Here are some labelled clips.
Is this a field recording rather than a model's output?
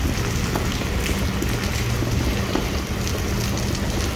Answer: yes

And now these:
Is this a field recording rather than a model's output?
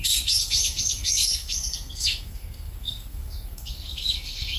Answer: no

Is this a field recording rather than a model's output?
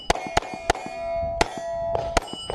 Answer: yes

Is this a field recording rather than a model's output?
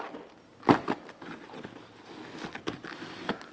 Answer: yes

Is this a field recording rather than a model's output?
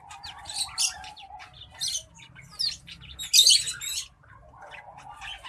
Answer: yes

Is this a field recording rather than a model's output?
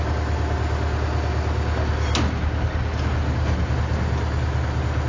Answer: yes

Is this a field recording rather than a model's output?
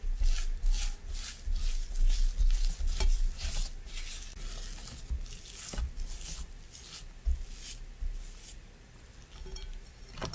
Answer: yes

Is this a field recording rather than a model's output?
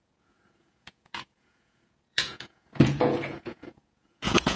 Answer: no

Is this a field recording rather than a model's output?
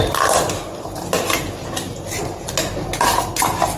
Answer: yes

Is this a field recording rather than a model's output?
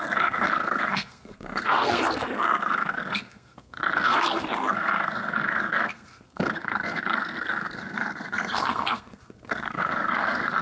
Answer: no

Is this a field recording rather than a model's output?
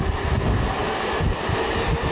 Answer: yes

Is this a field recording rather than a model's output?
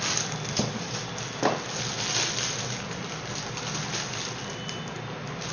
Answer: yes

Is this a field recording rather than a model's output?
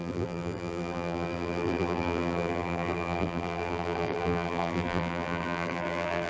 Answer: no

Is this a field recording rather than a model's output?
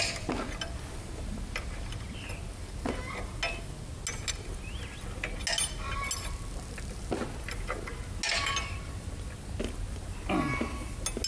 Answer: yes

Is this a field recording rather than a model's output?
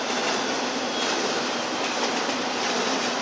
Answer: yes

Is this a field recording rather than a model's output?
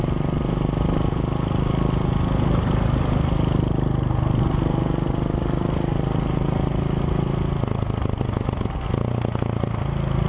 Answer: yes